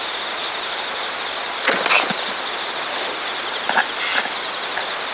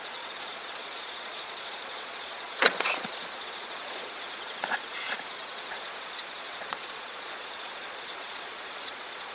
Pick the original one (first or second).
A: first